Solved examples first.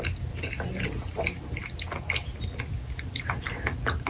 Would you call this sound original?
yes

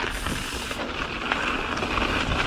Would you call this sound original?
yes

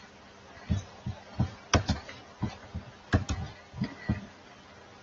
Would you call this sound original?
yes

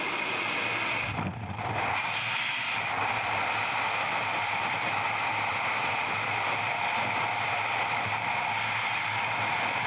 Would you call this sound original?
yes